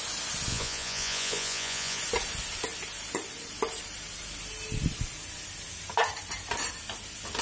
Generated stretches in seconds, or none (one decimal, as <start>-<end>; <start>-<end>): 0.5-2.0